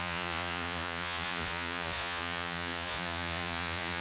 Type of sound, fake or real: fake